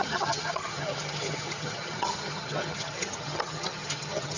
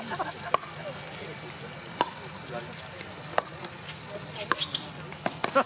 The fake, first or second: first